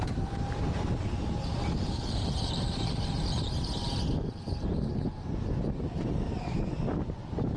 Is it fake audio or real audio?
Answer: real